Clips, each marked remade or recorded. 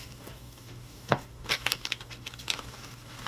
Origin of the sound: remade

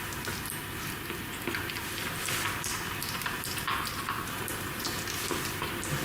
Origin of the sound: recorded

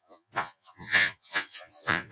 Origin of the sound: remade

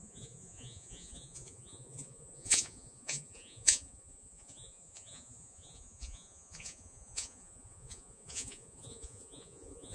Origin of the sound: remade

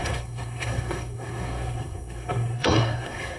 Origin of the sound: remade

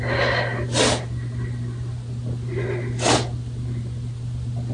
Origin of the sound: recorded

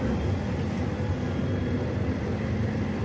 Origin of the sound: recorded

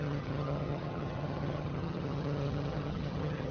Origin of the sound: remade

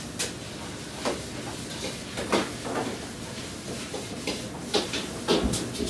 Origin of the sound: recorded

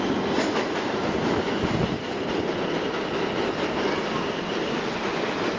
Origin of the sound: recorded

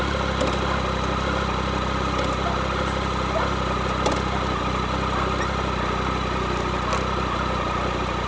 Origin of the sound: recorded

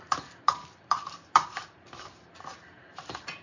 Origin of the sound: remade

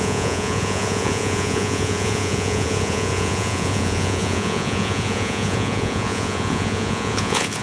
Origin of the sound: remade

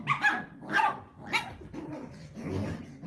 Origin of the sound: recorded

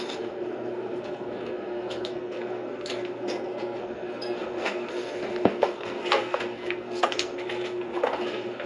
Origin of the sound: remade